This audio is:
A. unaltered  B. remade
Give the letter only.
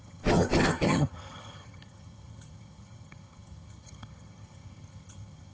B